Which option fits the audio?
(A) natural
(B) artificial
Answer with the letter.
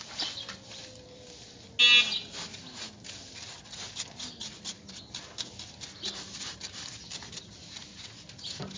A